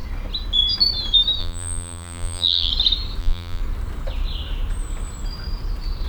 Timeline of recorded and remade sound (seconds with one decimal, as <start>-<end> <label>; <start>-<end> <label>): 0.0-1.4 recorded; 1.4-2.7 remade; 2.7-3.2 recorded; 3.2-3.6 remade; 3.6-6.1 recorded